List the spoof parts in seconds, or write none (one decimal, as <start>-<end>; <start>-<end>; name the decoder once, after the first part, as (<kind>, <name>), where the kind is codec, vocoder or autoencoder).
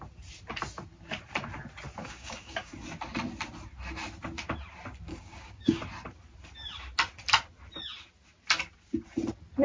2.0-2.7 (codec, DAC); 5.1-5.8